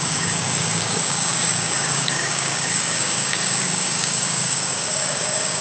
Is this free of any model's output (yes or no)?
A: no